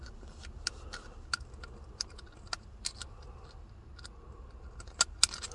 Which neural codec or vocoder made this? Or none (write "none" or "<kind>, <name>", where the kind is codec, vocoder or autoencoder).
none